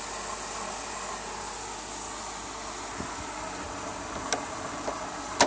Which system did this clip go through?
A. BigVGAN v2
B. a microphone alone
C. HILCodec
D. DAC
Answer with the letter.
B